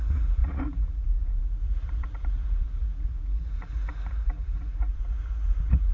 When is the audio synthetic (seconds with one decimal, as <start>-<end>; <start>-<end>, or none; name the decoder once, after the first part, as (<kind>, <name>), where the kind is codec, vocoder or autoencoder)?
0.0-5.9 (vocoder, Vocos)